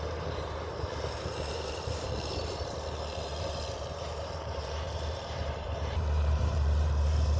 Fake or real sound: fake